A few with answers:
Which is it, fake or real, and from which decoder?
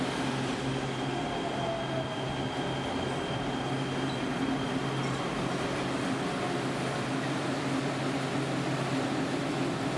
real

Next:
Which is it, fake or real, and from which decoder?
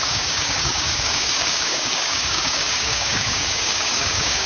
fake, codec, DAC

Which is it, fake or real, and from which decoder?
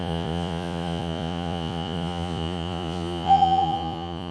fake, vocoder, Vocos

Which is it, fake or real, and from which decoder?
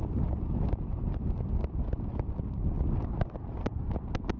real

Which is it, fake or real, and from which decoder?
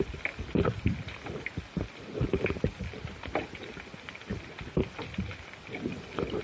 real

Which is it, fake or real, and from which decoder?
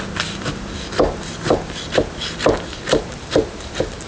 real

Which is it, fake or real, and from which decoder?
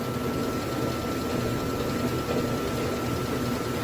real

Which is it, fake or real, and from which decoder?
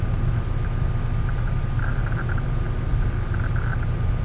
real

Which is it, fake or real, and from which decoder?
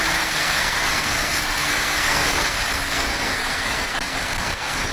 fake, codec, SNAC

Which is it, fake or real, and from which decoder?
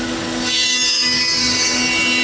fake, codec, DAC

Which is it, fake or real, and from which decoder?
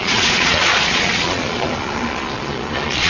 fake, vocoder, Vocos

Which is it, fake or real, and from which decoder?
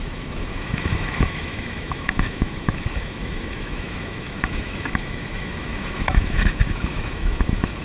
fake, autoencoder, DAC-VAE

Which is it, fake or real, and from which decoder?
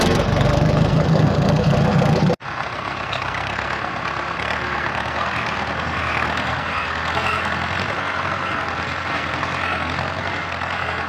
fake, codec, SNAC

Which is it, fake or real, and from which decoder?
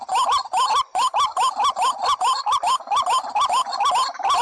real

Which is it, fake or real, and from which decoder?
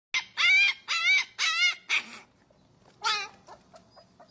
real